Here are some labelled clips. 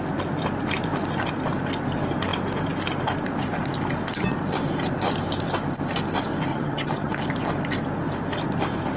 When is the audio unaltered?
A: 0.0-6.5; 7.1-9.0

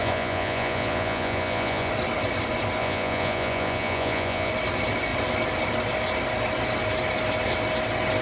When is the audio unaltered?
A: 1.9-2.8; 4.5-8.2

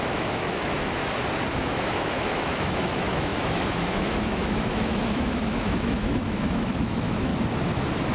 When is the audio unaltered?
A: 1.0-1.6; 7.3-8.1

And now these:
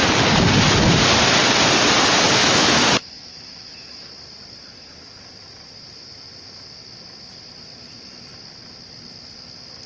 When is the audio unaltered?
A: 0.0-2.4; 4.1-9.9

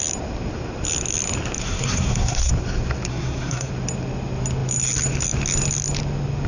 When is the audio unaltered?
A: 0.0-1.6; 2.5-3.1; 3.7-6.5